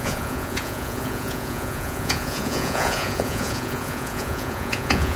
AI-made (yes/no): yes